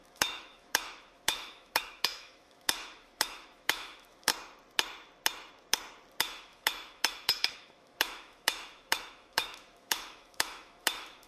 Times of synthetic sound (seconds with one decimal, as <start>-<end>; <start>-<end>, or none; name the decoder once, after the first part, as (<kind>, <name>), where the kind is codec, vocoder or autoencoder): 0.0-4.3 (autoencoder, DAC-VAE); 6.2-11.3